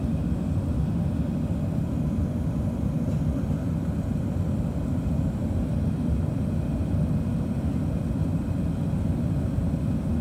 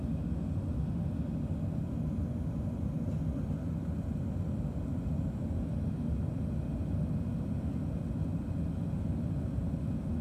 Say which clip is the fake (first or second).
first